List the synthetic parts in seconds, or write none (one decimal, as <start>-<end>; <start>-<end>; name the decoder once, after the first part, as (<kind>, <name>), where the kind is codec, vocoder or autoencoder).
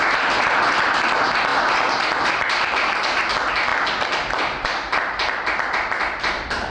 none